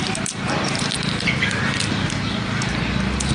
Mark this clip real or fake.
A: real